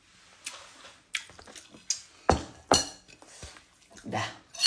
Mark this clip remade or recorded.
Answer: recorded